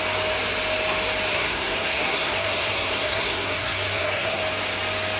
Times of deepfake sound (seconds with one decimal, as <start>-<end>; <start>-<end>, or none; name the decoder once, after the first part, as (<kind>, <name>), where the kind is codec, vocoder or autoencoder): 1.3-4.4 (codec, SNAC)